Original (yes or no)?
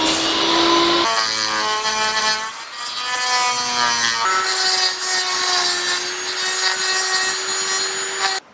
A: yes